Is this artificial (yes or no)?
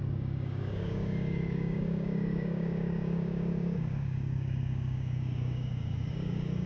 yes